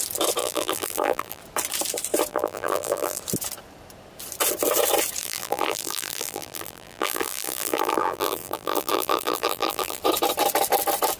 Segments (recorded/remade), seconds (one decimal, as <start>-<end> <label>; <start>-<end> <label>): 0.0-0.4 recorded; 0.4-1.4 remade; 1.4-2.3 recorded; 2.3-3.2 remade; 3.2-5.2 recorded; 5.2-10.0 remade; 10.0-11.2 recorded